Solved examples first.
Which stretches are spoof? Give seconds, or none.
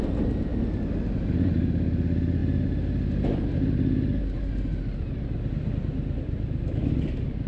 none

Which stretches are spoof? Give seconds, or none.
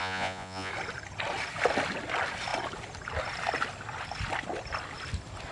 0.0-0.7 (vocoder, Vocos)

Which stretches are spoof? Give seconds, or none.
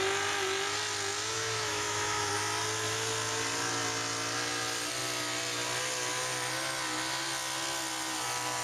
1.3-2.3 (autoencoder, DAC-VAE)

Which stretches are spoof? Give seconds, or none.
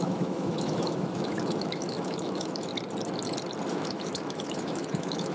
0.0-2.7 (autoencoder, DAC-VAE); 3.7-5.3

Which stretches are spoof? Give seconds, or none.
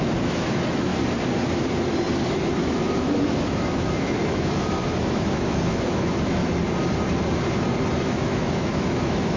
0.0-0.9 (autoencoder, DAC-VAE); 2.6-6.4; 8.0-9.4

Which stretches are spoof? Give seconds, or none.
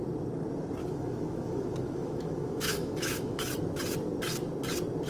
0.8-3.5 (autoencoder, DAC-VAE)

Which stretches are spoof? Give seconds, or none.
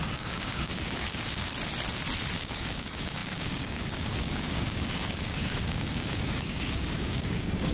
0.0-1.5 (codec, DAC); 2.3-7.7